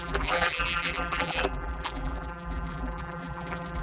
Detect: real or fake fake